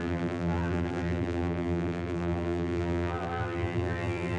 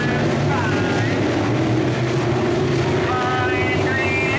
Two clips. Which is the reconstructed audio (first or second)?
first